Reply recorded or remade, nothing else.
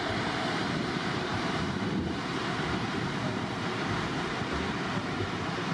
remade